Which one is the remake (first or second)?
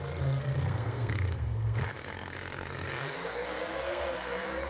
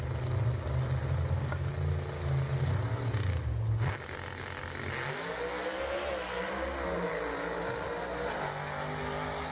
first